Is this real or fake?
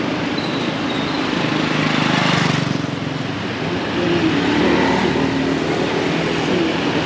real